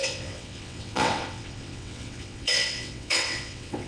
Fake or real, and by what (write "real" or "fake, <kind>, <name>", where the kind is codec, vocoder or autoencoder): fake, vocoder, WaveNeXt